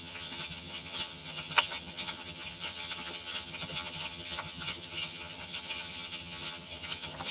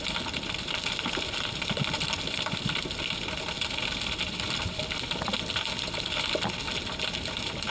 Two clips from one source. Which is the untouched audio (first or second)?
second